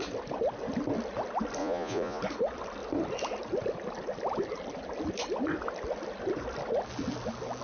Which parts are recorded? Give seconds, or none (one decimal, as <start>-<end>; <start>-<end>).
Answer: 0.0-1.6; 2.2-7.6